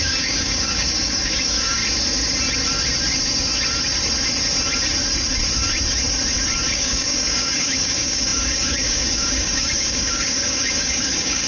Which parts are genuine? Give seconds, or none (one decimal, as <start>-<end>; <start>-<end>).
1.8-6.7